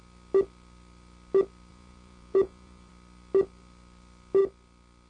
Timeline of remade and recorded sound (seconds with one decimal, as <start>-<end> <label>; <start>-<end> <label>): 0.0-1.7 recorded; 1.7-2.9 remade; 2.9-5.1 recorded